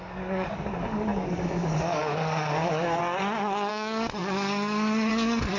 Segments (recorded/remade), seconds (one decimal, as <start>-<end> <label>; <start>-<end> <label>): 0.0-3.0 remade; 3.0-3.7 recorded; 3.7-5.6 remade